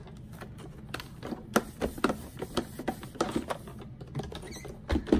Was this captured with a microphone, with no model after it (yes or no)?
yes